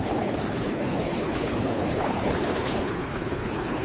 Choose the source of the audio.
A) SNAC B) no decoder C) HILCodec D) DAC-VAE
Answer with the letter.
C